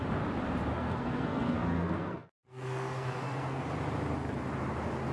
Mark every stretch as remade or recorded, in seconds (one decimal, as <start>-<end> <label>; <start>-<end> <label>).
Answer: 0.0-0.7 recorded; 0.7-3.6 remade; 3.6-5.1 recorded